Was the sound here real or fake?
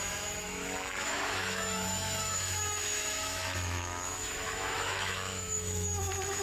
fake